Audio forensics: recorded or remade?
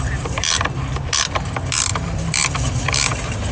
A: remade